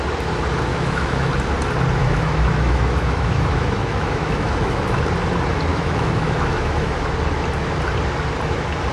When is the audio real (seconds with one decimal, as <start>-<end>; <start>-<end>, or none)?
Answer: 0.0-0.7; 1.3-2.0; 5.0-5.7; 7.1-8.9